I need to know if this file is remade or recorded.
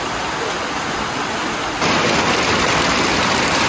remade